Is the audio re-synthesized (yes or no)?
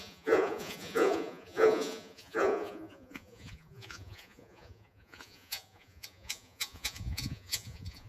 yes